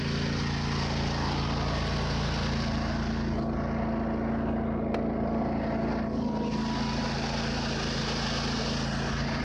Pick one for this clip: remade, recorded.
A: recorded